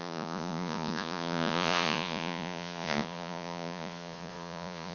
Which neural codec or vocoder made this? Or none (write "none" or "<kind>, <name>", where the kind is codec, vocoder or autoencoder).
vocoder, Vocos